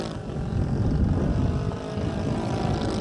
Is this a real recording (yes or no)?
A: yes